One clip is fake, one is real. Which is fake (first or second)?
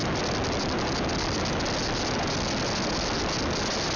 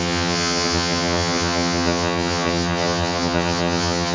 second